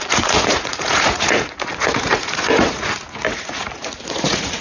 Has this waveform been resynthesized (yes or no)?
yes